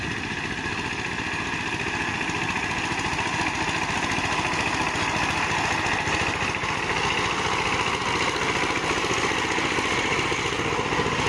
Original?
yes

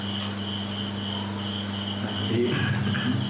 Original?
yes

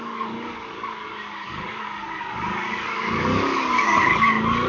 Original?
no